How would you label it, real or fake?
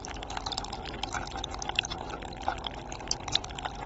fake